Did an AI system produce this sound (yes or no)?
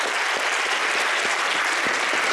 no